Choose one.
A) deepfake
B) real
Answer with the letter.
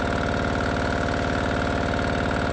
B